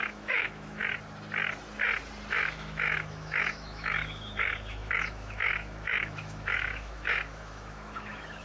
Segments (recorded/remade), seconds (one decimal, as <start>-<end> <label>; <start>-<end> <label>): 0.0-0.8 remade; 0.8-2.3 recorded; 2.3-8.4 remade